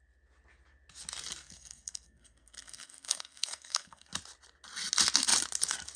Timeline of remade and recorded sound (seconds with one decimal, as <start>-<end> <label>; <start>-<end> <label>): 0.0-1.4 recorded; 1.4-4.1 remade; 4.1-6.0 recorded